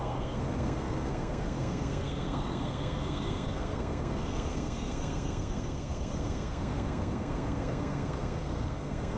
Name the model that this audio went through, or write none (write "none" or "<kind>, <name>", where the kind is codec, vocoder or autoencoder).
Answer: codec, SNAC